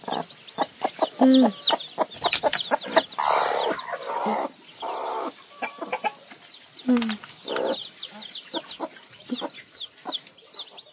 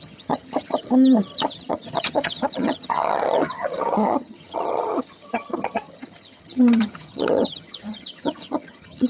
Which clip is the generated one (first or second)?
second